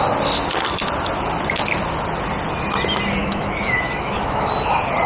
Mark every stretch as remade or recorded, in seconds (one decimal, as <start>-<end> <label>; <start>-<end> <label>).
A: 0.0-3.2 recorded; 3.2-4.5 remade; 4.5-5.1 recorded